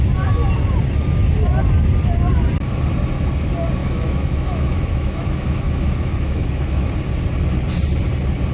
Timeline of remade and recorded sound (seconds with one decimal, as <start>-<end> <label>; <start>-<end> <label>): 0.0-3.8 recorded; 3.8-6.9 remade; 6.9-8.5 recorded